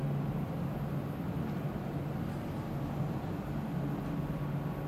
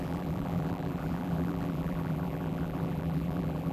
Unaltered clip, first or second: first